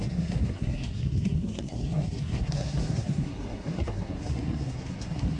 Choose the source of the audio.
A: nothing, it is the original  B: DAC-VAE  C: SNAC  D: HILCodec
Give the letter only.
C